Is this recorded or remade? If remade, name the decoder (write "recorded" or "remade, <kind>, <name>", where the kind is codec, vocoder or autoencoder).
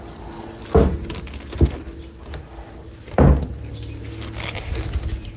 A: recorded